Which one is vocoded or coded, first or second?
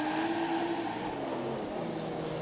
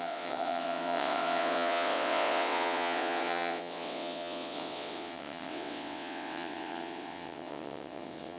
second